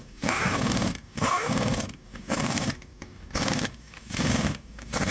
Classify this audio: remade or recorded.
remade